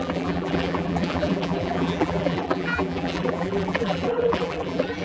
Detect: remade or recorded remade